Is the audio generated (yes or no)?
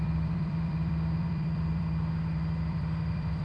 yes